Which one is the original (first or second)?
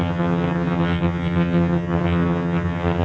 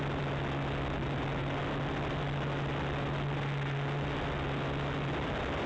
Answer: second